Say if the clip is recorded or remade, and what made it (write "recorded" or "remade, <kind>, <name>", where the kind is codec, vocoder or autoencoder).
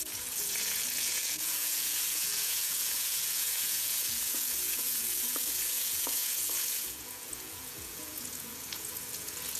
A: remade, vocoder, Vocos